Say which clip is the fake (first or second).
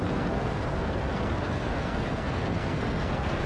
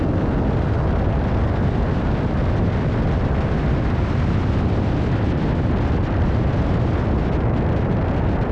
first